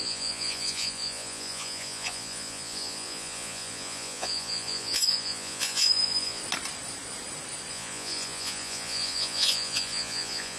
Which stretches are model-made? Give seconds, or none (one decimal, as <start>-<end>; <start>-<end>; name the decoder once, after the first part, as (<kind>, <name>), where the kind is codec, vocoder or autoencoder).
0.0-6.4 (vocoder, Vocos); 7.7-10.6